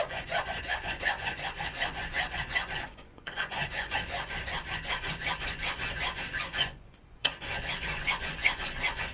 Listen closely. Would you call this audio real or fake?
fake